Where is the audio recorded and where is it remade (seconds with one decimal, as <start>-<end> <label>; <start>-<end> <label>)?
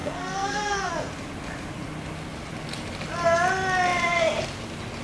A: 0.0-0.9 remade; 0.9-5.0 recorded